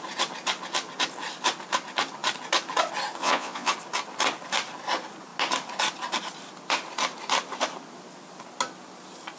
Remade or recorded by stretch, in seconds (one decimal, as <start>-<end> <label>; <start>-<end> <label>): 0.0-3.2 recorded; 3.2-3.7 remade; 3.7-9.4 recorded